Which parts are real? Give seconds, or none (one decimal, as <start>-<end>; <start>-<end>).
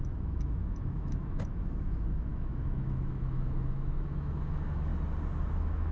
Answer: 4.9-5.5